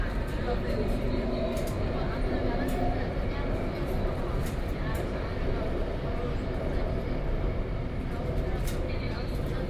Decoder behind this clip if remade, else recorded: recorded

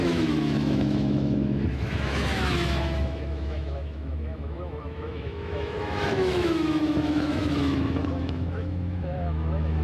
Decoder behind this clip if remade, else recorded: remade, autoencoder, DAC-VAE